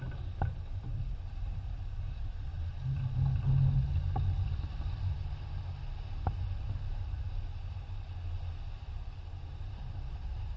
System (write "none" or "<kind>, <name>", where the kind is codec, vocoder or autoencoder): none